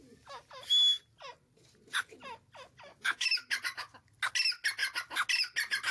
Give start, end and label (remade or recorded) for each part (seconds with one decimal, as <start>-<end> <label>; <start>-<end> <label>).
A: 0.0-2.9 recorded; 2.9-4.0 remade; 4.0-5.9 recorded